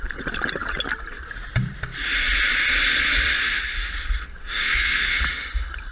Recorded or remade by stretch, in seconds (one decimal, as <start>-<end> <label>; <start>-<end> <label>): 0.0-3.4 recorded; 3.4-3.9 remade; 3.9-4.4 recorded; 4.4-5.2 remade; 5.2-5.9 recorded